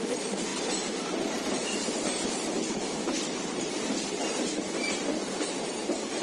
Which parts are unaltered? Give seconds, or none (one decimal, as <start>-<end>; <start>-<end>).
none